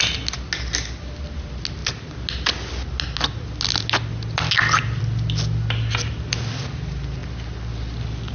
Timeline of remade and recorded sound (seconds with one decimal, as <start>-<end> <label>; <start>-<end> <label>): 0.0-8.3 recorded